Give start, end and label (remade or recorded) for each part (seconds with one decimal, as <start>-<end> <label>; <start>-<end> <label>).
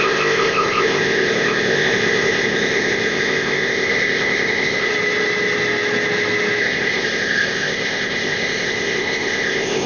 0.0-4.9 remade; 4.9-6.6 recorded; 6.6-9.9 remade